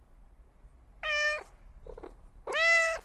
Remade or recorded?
recorded